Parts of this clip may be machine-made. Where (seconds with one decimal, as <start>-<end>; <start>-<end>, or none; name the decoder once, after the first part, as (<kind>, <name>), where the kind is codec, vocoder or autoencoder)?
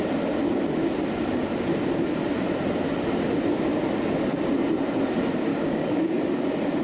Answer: 5.5-6.2 (codec, DAC)